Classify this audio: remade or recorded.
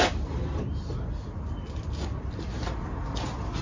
recorded